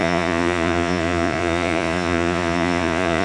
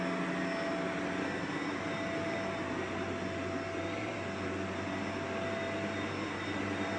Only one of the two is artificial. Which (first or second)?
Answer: first